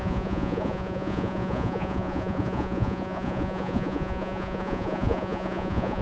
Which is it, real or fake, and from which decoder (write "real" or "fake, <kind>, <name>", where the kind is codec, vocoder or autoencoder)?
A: fake, vocoder, Vocos